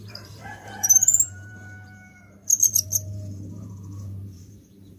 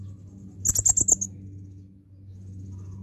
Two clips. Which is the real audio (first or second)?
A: second